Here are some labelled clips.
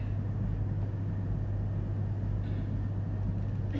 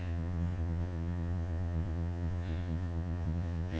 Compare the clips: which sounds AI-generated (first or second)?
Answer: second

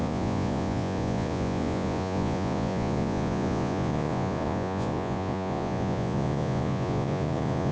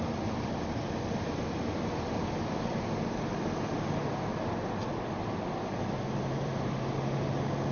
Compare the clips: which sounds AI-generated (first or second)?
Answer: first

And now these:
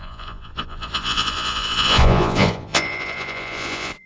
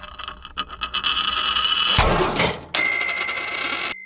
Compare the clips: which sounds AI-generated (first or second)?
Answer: first